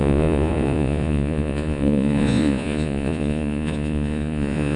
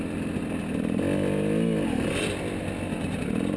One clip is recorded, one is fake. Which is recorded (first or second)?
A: second